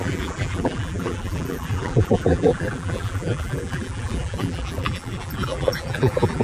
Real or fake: fake